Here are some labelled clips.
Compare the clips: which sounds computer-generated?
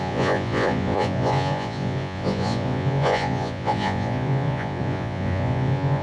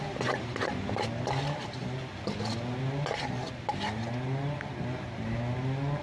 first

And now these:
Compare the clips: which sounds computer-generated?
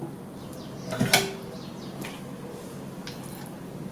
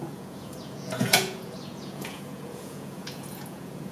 second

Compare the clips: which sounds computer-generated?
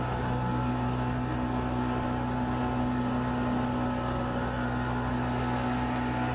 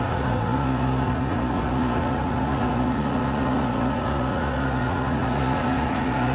second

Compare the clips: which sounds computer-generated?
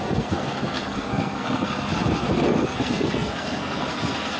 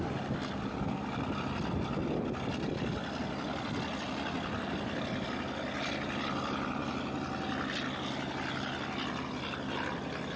first